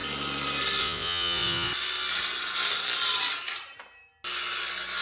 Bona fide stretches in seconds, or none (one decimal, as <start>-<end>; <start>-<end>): 0.0-0.8; 1.7-5.0